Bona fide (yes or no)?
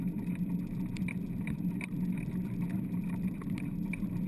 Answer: yes